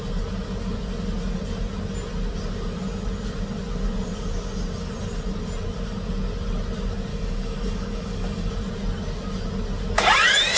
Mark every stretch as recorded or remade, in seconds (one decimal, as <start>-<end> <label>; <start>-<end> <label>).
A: 0.0-7.1 recorded; 7.1-8.5 remade; 8.5-10.6 recorded